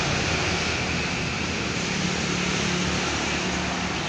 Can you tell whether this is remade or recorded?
recorded